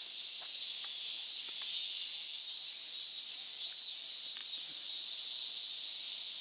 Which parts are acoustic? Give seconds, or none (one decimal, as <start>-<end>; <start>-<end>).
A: 0.0-6.4